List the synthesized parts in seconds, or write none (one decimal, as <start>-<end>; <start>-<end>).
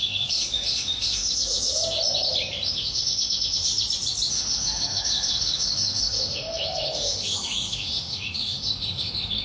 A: 0.0-1.8; 2.7-3.7; 4.3-9.4